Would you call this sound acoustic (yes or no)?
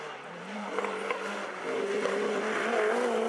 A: yes